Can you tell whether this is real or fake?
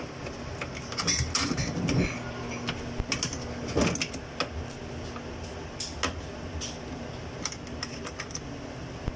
real